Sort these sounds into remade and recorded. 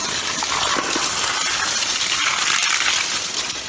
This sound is recorded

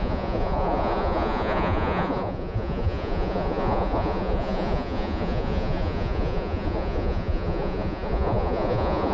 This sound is remade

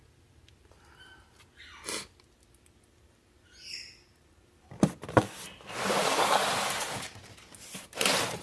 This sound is recorded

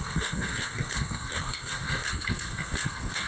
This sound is remade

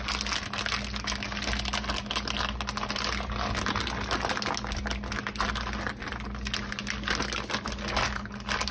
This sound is recorded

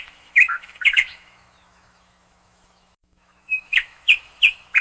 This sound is remade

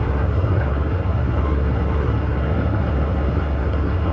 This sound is remade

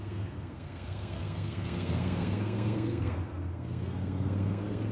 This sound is remade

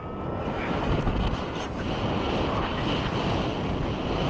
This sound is recorded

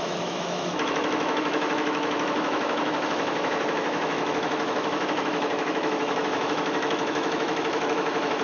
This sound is remade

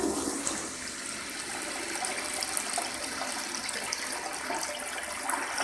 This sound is recorded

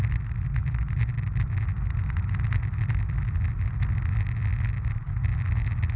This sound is recorded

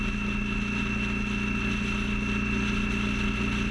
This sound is recorded